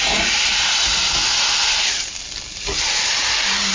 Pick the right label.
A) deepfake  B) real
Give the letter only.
B